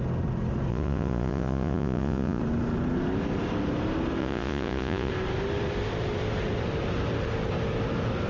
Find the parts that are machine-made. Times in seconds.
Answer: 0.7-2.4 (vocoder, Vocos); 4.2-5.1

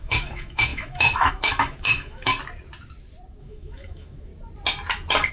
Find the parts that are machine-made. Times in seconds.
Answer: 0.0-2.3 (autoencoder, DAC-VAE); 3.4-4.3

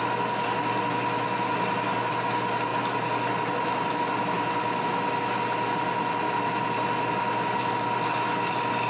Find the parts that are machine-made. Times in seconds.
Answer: none

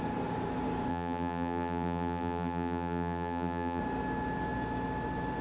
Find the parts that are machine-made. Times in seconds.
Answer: 0.9-3.8 (vocoder, BigVGAN v2)

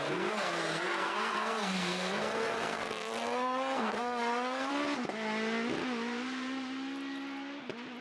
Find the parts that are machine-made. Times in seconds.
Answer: 0.0-4.7 (codec, SNAC)